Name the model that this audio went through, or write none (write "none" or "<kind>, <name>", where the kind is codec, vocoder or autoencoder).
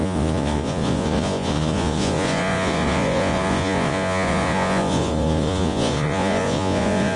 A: vocoder, Vocos